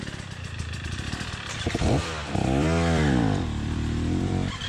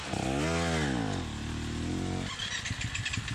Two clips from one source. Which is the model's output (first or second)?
first